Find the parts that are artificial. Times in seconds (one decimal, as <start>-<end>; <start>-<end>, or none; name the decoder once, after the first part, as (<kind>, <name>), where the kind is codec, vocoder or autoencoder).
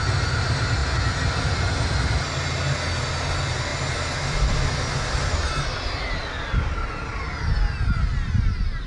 none